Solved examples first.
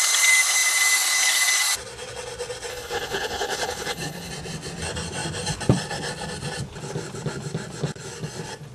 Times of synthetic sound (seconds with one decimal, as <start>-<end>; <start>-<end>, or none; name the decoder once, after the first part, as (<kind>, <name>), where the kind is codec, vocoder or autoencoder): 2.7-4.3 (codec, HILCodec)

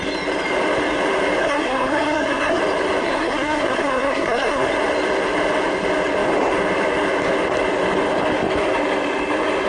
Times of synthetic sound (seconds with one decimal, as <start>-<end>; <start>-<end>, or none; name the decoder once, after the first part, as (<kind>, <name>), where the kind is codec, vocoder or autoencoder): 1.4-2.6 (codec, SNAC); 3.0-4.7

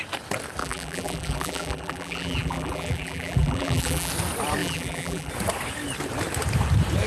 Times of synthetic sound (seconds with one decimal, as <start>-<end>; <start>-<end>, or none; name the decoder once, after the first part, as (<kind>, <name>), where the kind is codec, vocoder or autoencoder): 0.6-4.1 (vocoder, BigVGAN v2); 4.6-5.3

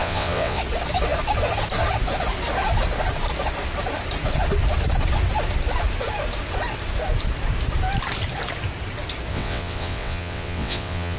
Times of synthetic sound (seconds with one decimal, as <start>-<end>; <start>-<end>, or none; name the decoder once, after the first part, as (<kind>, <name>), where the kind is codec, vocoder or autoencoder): 0.0-0.6 (vocoder, WaveNeXt); 9.3-11.2